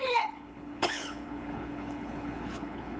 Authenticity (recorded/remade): remade